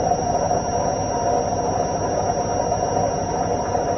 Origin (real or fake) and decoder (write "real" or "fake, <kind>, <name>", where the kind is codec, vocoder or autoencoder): real